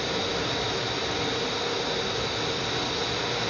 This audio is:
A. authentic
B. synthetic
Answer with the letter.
A